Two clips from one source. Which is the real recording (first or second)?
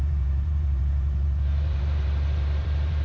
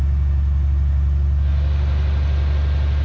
second